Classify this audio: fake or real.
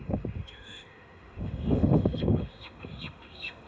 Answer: fake